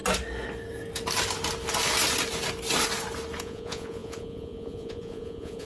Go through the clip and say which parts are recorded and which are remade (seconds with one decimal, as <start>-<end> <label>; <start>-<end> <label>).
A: 0.0-3.4 recorded; 3.4-5.6 remade